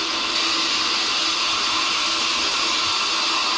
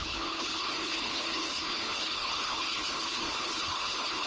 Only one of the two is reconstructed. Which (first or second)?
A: second